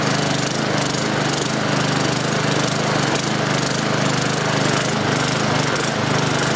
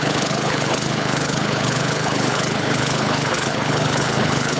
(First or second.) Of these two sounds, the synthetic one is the second